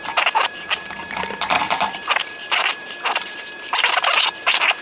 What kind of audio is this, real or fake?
fake